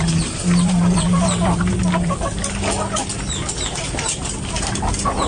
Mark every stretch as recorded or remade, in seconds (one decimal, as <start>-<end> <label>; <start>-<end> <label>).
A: 0.0-1.8 remade; 1.8-5.3 recorded